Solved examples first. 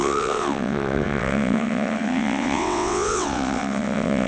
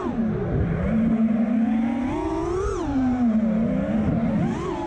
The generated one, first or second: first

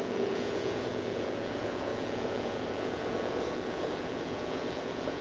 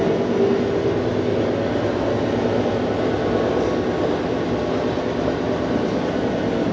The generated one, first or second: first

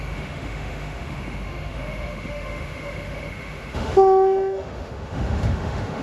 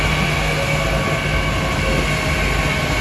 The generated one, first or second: first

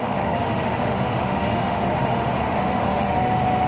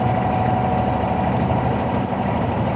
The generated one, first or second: first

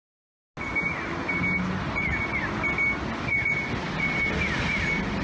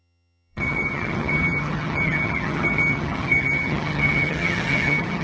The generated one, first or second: second